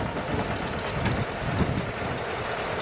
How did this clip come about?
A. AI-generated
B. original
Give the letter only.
B